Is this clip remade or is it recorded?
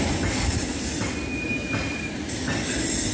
recorded